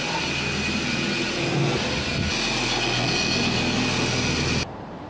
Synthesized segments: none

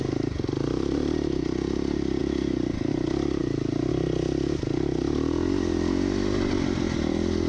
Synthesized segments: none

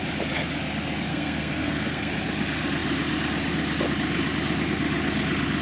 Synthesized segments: 1.1-2.1

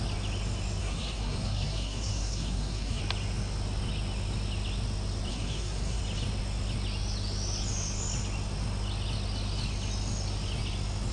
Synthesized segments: 0.8-3.0; 5.3-6.0